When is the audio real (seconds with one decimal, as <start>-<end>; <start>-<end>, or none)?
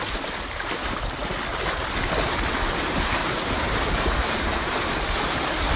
0.0-3.2; 4.9-5.8